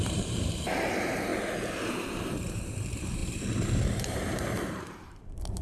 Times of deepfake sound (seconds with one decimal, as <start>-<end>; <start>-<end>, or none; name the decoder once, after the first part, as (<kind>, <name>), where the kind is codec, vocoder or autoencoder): 0.0-1.3 (vocoder, BigVGAN v2); 2.0-5.6